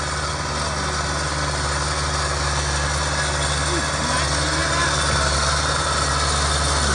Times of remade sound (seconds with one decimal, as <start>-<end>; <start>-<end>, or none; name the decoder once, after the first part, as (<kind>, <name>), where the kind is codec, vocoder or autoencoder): none

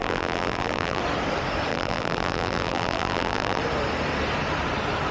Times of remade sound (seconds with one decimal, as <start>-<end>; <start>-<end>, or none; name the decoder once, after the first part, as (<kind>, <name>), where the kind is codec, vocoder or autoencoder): 0.0-1.0 (vocoder, BigVGAN v2); 1.7-3.6

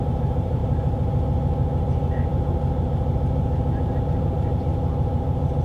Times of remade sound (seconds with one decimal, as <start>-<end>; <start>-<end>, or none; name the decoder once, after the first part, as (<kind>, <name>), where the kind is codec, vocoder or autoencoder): 0.0-0.6 (vocoder, BigVGAN v2); 4.0-4.7